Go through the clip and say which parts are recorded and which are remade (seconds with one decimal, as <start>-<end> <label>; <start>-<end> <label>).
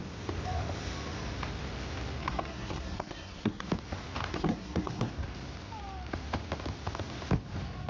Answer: 0.0-2.2 recorded; 2.2-3.7 remade; 3.7-4.3 recorded; 4.3-5.1 remade; 5.1-7.9 recorded